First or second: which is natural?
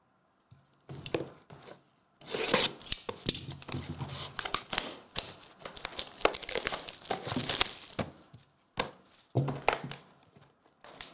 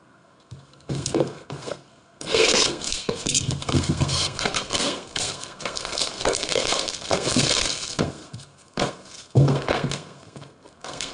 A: first